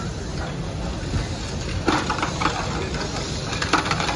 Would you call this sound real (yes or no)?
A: yes